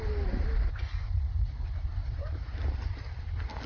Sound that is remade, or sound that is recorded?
recorded